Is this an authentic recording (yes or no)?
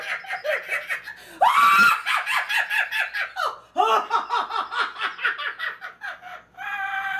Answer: yes